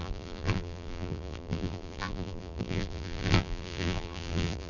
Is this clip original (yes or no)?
no